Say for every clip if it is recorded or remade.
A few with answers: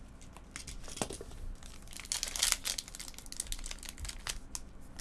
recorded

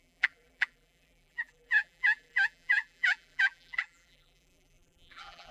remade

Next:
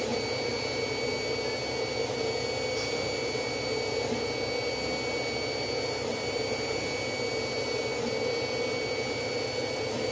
recorded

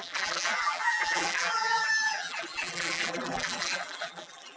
remade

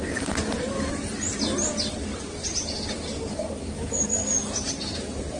recorded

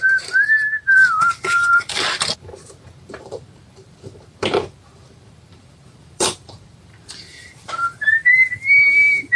remade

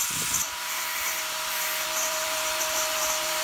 remade